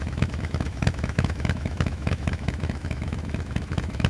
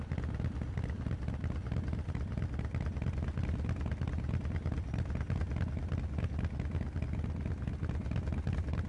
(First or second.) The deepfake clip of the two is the first